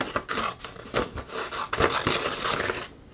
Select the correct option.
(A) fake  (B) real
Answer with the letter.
B